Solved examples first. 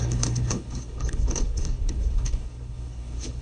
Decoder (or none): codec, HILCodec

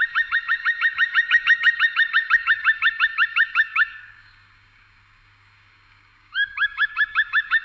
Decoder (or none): codec, DAC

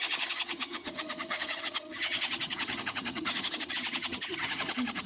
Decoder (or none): vocoder, HiFi-GAN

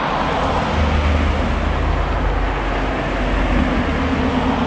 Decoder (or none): none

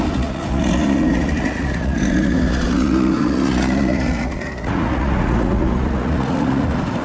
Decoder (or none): vocoder, Vocos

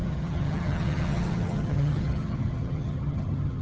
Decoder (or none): vocoder, HiFi-GAN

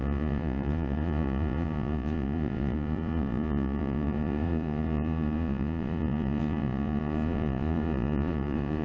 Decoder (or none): vocoder, Vocos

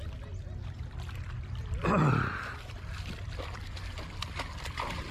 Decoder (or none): none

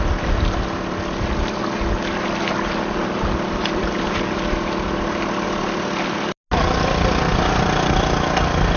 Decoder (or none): none